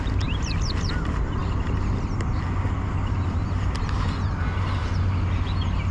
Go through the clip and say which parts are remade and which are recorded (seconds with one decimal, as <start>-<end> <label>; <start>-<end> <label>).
0.0-5.9 recorded